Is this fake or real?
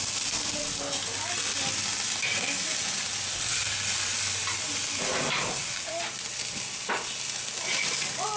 real